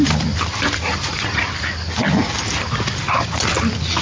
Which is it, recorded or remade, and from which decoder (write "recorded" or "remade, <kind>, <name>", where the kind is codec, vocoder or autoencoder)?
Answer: recorded